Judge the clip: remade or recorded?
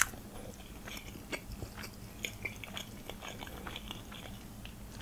recorded